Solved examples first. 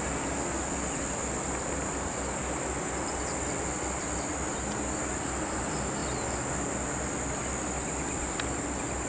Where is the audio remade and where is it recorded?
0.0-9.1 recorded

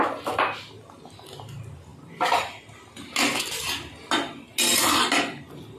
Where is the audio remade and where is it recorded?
0.0-5.8 recorded

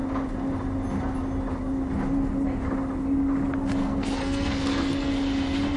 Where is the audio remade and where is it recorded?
0.0-3.8 recorded; 3.8-5.1 remade; 5.1-5.8 recorded

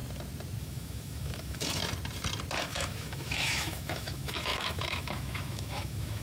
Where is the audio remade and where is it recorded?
0.0-0.6 recorded; 0.6-1.8 remade; 1.8-2.6 recorded; 2.6-6.2 remade

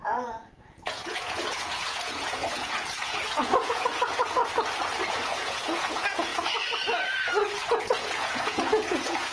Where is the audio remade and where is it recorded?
0.0-4.4 remade; 4.4-5.1 recorded; 5.1-6.3 remade; 6.3-7.7 recorded; 7.7-9.3 remade

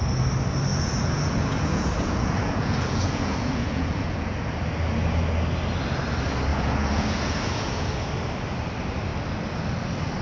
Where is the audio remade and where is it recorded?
0.0-0.7 recorded; 0.7-4.5 remade; 4.5-6.5 recorded; 6.5-8.1 remade; 8.1-10.2 recorded

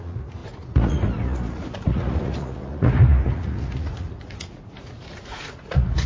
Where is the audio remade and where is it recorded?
0.0-6.1 remade

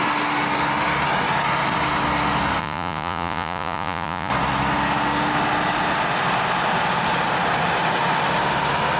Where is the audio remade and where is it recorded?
0.0-2.6 recorded; 2.6-4.3 remade; 4.3-9.0 recorded